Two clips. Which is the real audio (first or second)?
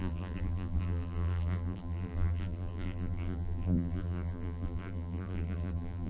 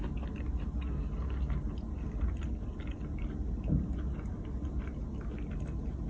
second